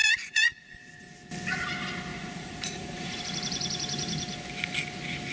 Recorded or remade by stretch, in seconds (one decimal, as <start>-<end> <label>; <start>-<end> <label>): 0.0-0.7 remade; 0.7-2.1 recorded; 2.1-3.2 remade; 3.2-5.3 recorded